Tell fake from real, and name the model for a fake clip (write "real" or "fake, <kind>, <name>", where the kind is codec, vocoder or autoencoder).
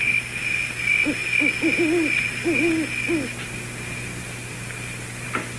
real